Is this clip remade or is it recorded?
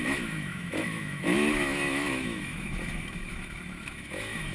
remade